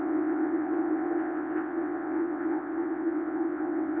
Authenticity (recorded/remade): remade